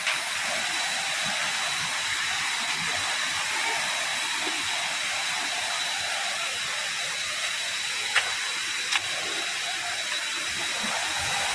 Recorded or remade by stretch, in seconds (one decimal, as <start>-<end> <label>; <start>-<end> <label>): 0.0-7.2 recorded; 7.2-8.3 remade; 8.3-11.5 recorded